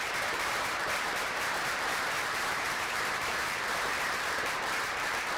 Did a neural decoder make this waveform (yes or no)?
yes